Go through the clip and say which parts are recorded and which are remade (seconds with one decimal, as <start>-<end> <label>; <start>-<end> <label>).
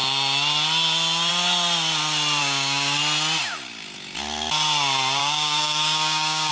0.0-2.4 recorded; 2.4-3.0 remade; 3.0-5.2 recorded; 5.2-6.5 remade